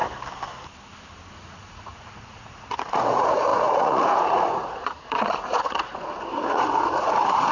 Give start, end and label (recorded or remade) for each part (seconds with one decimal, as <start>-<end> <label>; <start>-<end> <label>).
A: 0.0-1.3 recorded; 1.3-7.5 remade